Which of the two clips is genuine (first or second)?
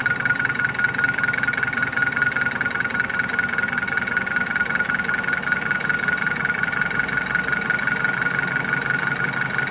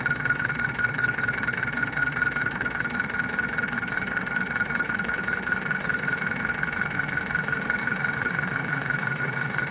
first